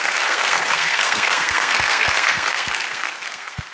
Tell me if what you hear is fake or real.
fake